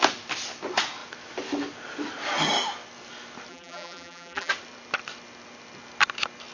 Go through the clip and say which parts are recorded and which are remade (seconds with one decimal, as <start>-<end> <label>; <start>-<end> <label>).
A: 0.0-3.5 recorded; 3.5-4.5 remade; 4.5-6.5 recorded